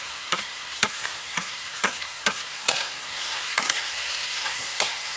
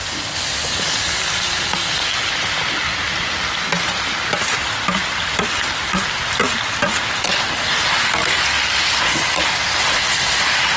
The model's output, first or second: first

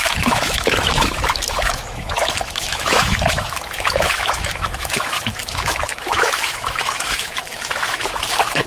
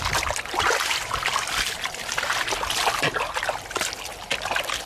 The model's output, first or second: first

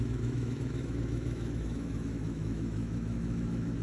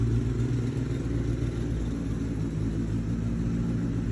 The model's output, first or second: first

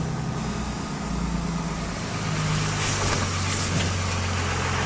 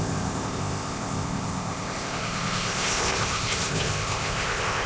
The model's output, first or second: second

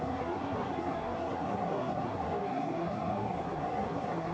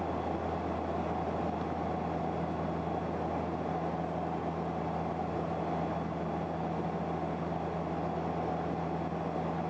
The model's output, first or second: first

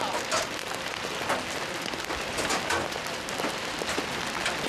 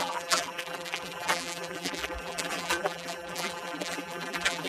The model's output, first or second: second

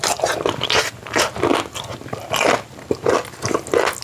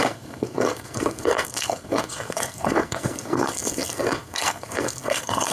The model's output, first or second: second